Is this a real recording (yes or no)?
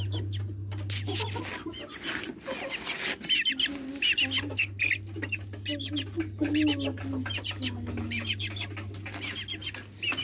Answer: yes